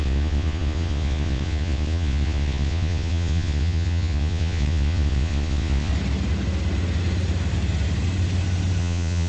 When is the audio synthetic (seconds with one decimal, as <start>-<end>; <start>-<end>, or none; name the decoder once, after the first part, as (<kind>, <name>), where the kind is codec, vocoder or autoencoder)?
0.0-5.9 (vocoder, Vocos); 8.8-9.3